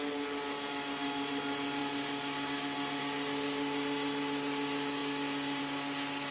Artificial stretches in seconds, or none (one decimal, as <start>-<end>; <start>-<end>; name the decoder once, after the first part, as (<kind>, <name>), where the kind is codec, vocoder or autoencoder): none